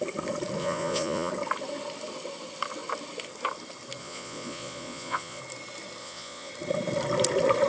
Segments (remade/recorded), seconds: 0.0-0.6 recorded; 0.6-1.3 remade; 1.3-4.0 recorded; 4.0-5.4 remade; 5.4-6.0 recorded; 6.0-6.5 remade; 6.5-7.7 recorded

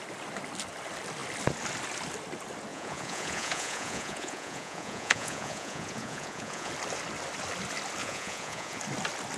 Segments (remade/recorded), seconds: 0.0-2.7 recorded; 2.7-6.7 remade; 6.7-8.0 recorded; 8.0-8.8 remade; 8.8-9.4 recorded

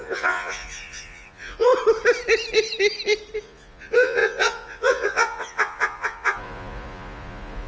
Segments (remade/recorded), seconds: 0.0-1.7 remade; 1.7-3.4 recorded; 3.4-7.7 remade

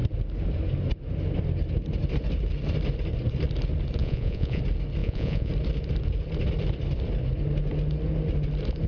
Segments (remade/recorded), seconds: 0.0-4.0 recorded; 4.0-4.6 remade; 4.6-5.0 recorded; 5.0-5.5 remade; 5.5-8.9 recorded

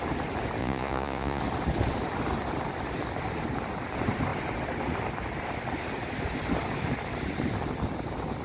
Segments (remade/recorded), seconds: 0.0-0.6 recorded; 0.6-1.4 remade; 1.4-8.4 recorded

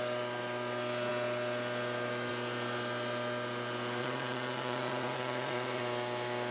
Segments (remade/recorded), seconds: 0.0-4.0 recorded; 4.0-5.8 remade; 5.8-6.5 recorded

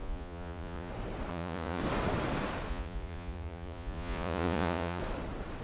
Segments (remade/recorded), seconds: 0.0-0.9 remade; 0.9-1.3 recorded; 1.3-1.8 remade; 1.8-2.7 recorded; 2.7-5.0 remade; 5.0-5.6 recorded

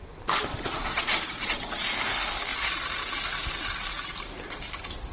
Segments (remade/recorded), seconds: 0.0-0.5 recorded; 0.5-1.6 remade; 1.6-5.1 recorded